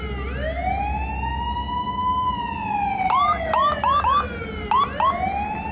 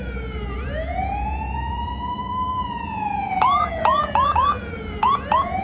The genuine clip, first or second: first